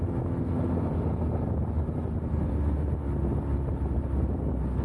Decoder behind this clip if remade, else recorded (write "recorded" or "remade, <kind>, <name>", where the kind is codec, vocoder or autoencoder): recorded